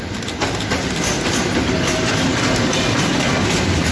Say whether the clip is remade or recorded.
recorded